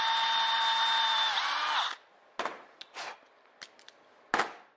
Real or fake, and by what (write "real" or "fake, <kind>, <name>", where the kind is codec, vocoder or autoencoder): real